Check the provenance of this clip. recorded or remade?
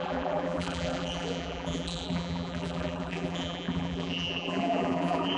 remade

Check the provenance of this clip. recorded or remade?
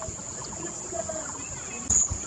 recorded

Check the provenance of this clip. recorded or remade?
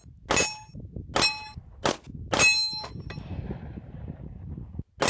recorded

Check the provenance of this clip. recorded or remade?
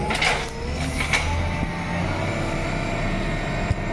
recorded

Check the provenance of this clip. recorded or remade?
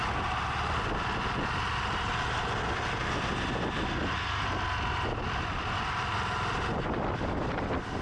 recorded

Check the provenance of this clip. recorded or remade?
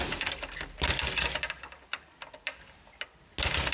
recorded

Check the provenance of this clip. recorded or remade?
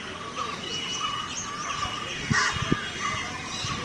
recorded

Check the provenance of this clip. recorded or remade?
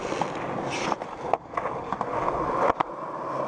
recorded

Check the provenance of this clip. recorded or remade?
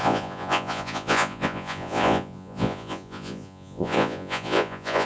remade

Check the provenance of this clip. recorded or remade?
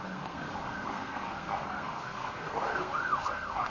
remade